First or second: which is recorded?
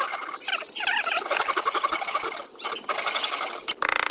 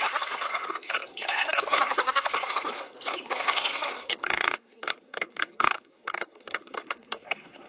first